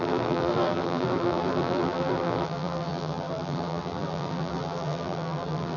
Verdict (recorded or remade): remade